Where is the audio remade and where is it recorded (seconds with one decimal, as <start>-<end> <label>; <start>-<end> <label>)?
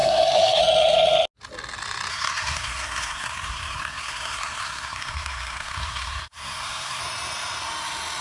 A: 0.0-0.6 remade; 0.6-2.1 recorded; 2.1-7.0 remade; 7.0-8.2 recorded